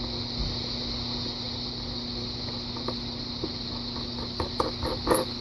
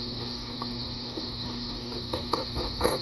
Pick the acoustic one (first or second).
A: first